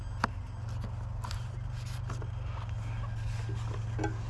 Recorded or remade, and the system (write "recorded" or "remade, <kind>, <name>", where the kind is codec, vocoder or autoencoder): recorded